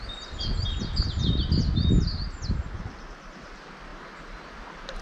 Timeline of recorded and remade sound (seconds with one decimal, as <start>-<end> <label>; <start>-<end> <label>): 0.0-5.0 recorded